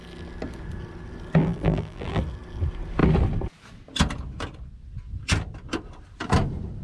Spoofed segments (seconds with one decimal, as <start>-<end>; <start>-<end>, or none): 1.4-2.2